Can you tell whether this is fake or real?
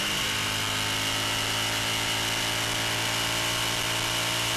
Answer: real